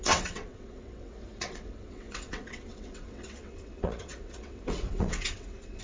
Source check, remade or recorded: remade